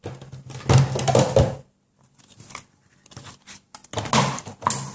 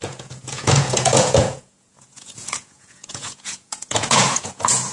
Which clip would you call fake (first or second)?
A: second